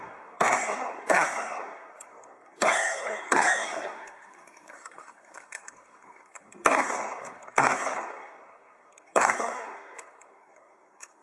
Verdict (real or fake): fake